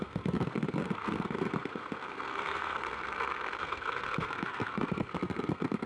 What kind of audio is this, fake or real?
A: fake